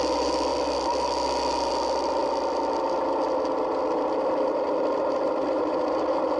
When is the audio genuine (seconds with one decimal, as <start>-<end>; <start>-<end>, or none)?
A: 0.0-6.4